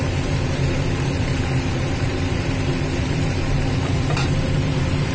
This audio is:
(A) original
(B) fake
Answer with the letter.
B